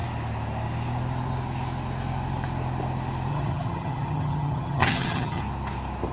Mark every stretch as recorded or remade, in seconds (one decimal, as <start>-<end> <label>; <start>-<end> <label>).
0.0-3.3 recorded; 3.3-5.4 remade; 5.4-6.1 recorded